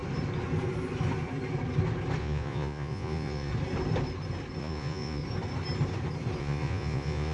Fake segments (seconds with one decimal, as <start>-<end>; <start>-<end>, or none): 2.2-3.5; 4.6-5.2; 6.4-7.3